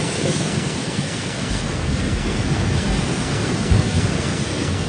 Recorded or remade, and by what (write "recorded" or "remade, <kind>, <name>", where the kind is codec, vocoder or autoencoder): remade, codec, SNAC